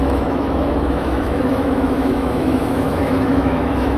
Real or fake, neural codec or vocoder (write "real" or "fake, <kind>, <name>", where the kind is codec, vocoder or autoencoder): fake, autoencoder, DAC-VAE